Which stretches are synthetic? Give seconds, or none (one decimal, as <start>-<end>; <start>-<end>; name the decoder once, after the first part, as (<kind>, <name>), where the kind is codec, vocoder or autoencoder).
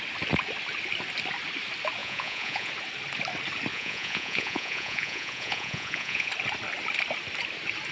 2.0-2.7 (vocoder, Vocos); 3.7-6.3